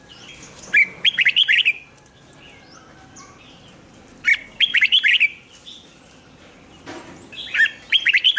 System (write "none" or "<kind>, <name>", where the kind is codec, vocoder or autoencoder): none